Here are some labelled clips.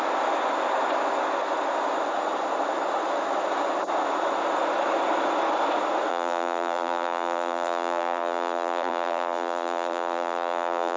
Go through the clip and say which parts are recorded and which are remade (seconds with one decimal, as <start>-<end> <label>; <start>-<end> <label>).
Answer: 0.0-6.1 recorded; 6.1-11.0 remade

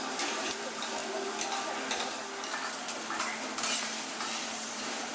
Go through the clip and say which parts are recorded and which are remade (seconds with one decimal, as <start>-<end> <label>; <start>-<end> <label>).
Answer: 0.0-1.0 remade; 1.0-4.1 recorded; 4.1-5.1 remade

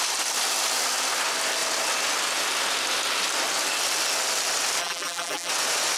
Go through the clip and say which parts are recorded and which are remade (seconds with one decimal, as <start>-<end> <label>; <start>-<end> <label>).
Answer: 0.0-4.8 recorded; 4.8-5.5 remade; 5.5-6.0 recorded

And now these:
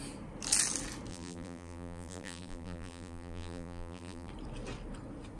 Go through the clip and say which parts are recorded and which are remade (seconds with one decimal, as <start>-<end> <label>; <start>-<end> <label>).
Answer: 0.0-1.1 recorded; 1.1-4.3 remade; 4.3-5.4 recorded

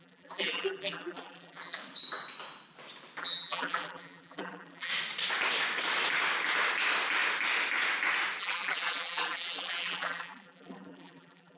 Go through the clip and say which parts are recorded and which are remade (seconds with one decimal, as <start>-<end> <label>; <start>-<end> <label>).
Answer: 0.0-1.8 remade; 1.8-3.2 recorded; 3.2-4.9 remade; 4.9-8.4 recorded; 8.4-11.6 remade

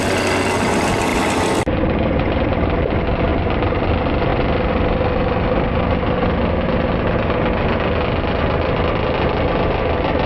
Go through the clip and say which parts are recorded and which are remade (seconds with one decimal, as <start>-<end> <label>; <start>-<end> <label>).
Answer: 0.0-3.3 recorded; 3.3-3.9 remade; 3.9-10.3 recorded

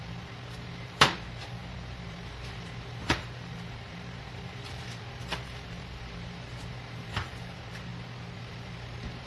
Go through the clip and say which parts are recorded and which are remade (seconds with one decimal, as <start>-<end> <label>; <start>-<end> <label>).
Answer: 0.0-7.9 remade; 7.9-8.4 recorded; 8.4-9.3 remade